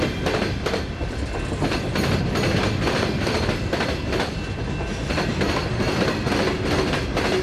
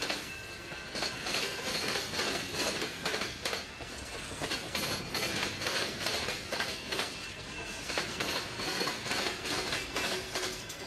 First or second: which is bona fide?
first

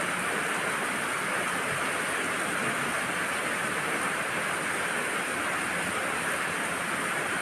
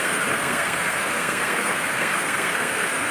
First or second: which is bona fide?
first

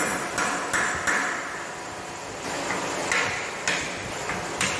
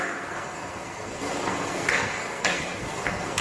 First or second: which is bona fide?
first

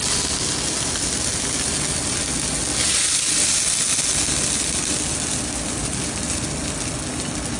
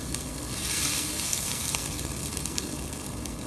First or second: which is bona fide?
first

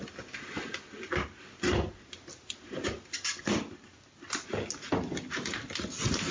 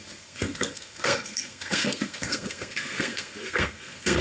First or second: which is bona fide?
first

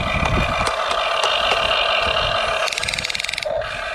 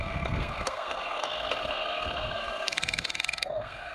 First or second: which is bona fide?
first